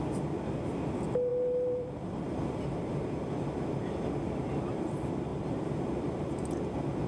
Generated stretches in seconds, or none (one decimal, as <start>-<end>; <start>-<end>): 1.3-2.9; 5.3-6.1